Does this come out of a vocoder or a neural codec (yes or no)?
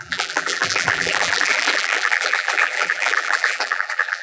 yes